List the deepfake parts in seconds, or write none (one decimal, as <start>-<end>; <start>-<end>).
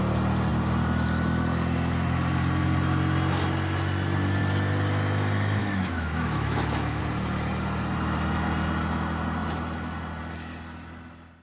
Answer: 5.6-7.0